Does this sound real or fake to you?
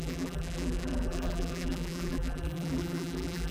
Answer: fake